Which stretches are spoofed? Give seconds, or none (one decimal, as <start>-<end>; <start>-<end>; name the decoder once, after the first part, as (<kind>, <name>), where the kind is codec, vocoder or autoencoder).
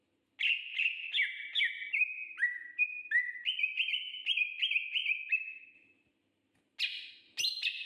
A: none